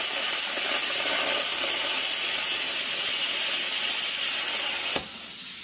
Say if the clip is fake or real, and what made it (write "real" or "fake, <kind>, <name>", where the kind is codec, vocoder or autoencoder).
real